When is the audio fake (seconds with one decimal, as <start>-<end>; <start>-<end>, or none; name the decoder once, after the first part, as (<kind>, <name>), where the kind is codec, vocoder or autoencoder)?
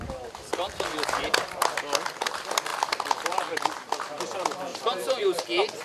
0.5-1.4 (vocoder, BigVGAN v2); 2.7-4.2; 4.7-5.2